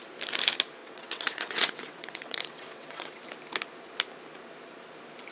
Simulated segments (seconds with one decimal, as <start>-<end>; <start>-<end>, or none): 0.8-3.1